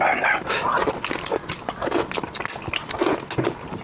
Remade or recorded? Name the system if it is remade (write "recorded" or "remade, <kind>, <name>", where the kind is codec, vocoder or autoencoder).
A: recorded